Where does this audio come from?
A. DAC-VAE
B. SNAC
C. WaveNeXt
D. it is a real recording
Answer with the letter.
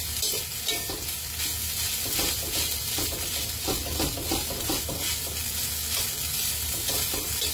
D